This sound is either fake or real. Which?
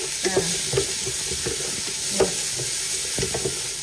real